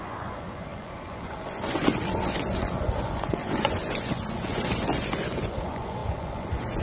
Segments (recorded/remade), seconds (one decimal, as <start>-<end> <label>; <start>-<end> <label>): 0.0-6.8 remade